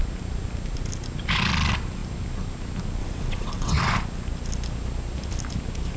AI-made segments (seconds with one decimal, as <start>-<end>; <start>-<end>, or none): 3.0-3.8